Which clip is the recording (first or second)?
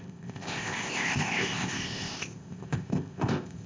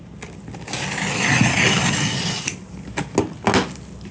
second